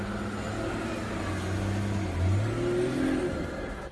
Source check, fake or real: real